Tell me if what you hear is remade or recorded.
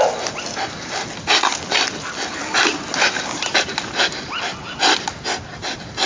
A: recorded